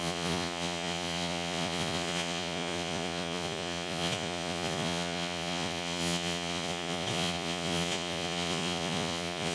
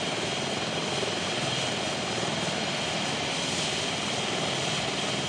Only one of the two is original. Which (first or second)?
second